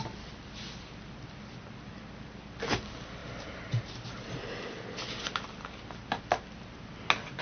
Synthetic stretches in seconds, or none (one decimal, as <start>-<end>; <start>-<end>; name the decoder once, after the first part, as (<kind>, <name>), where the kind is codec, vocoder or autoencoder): none